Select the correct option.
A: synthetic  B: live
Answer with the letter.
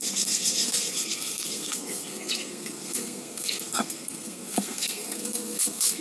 A